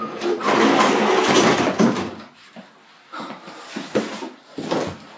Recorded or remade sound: recorded